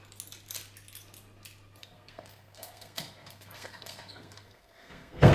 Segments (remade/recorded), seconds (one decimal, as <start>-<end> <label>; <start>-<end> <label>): 0.0-1.8 recorded; 1.8-5.3 remade